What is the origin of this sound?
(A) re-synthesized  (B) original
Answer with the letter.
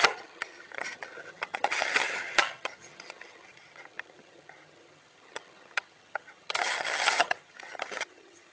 A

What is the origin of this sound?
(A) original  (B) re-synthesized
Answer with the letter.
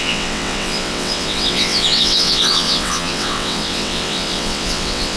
B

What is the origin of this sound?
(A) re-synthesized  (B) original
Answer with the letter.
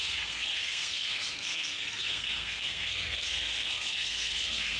A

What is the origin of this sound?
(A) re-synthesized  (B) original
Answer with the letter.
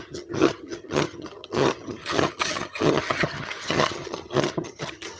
A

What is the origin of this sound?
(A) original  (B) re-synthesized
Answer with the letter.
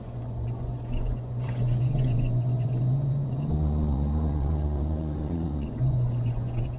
B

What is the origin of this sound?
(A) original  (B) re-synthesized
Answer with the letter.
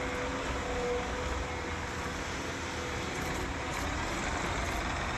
A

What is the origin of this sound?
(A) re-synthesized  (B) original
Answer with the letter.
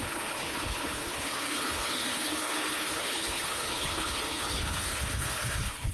A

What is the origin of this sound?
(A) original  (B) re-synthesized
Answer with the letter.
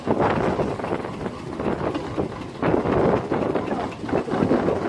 A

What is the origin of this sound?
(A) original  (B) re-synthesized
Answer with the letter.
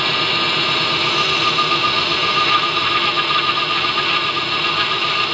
A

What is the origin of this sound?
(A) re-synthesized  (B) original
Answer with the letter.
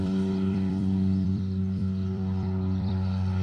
A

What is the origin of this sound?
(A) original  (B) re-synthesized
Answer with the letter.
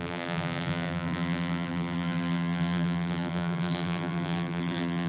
B